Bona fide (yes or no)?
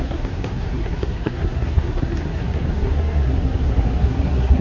no